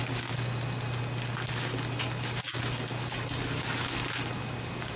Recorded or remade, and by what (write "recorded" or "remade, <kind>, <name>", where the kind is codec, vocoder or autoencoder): recorded